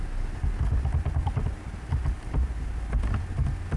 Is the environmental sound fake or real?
real